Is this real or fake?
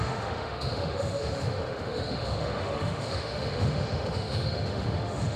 fake